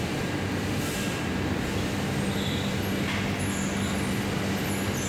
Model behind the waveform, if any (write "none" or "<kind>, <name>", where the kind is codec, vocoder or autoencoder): none